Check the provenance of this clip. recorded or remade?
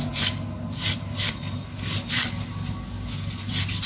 recorded